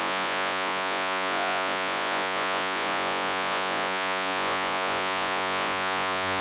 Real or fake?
fake